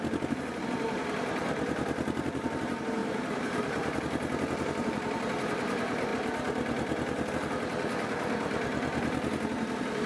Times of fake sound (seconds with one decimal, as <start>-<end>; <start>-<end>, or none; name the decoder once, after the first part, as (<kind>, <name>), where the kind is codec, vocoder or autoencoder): 3.0-4.0 (vocoder, BigVGAN v2)